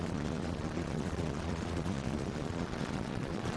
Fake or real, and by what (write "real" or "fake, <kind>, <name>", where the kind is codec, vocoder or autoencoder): fake, vocoder, Vocos